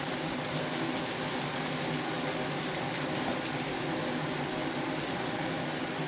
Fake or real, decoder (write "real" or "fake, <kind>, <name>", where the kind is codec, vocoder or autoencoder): real